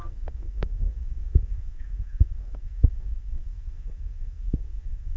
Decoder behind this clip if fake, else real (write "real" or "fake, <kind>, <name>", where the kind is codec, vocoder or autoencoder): fake, codec, SNAC